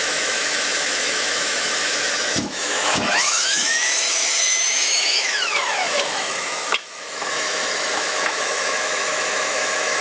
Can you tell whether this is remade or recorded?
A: remade